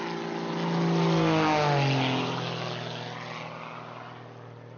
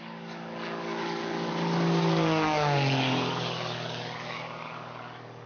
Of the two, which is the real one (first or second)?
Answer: first